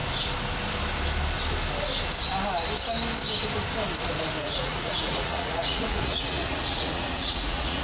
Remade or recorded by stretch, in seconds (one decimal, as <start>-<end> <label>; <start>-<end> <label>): 0.0-4.4 recorded; 4.4-7.8 remade